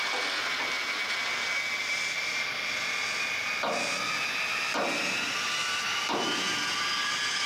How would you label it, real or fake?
real